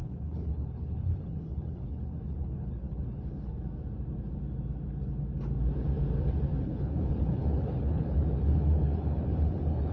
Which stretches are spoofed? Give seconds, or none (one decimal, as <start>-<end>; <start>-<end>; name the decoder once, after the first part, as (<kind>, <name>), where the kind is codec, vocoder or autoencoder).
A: 0.0-3.5 (codec, HILCodec); 6.6-9.9